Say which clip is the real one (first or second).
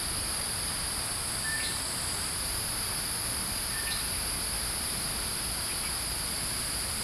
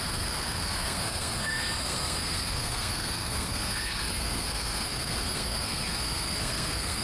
first